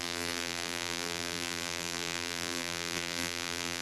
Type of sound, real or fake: fake